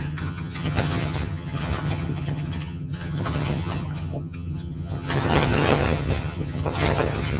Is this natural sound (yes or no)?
no